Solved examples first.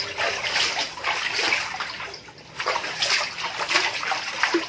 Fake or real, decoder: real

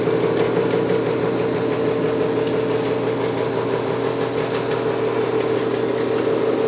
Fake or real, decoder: real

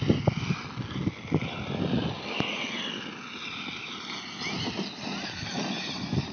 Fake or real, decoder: real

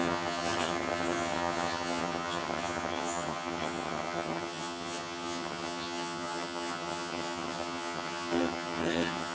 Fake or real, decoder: fake, vocoder, HiFi-GAN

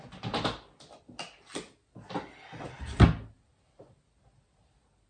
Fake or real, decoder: real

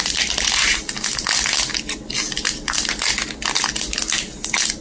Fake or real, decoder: real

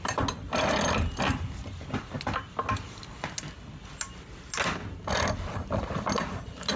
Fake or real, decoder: real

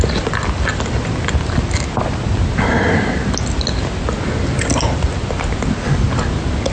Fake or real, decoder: real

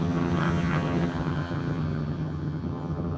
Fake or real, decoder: fake, vocoder, HiFi-GAN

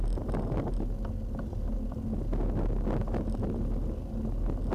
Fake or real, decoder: real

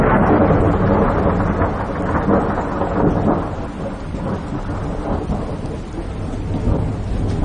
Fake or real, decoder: real